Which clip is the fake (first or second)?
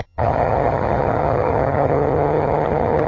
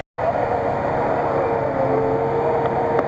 first